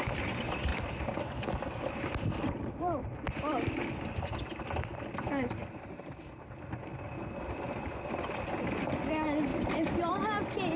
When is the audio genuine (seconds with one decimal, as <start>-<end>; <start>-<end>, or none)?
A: 0.0-0.7; 4.6-9.5; 10.1-10.8